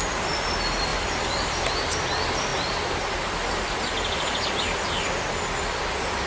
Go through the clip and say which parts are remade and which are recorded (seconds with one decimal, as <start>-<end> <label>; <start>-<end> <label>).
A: 0.0-0.9 recorded; 0.9-1.6 remade; 1.6-6.3 recorded